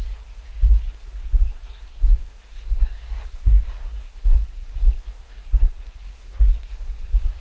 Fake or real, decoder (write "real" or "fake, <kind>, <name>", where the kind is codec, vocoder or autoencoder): fake, codec, SNAC